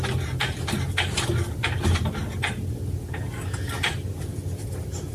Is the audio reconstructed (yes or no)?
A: no